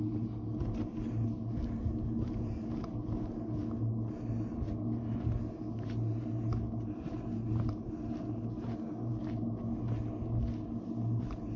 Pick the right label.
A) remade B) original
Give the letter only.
B